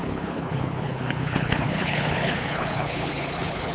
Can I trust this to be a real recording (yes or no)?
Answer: no